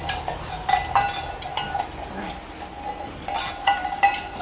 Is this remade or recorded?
recorded